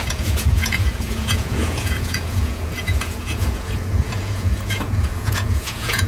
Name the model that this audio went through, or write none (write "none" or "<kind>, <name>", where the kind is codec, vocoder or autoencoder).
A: vocoder, Vocos